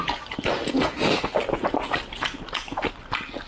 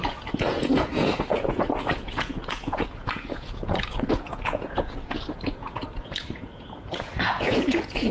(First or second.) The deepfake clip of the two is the second